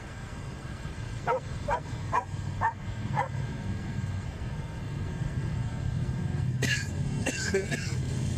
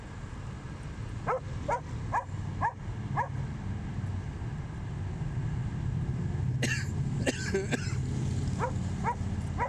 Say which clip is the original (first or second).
second